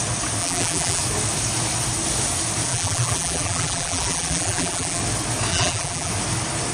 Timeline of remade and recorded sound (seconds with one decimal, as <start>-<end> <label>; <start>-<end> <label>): 0.0-0.4 recorded; 0.4-1.0 remade; 1.0-2.7 recorded; 2.7-5.0 remade; 5.0-5.5 recorded; 5.5-6.1 remade; 6.1-6.7 recorded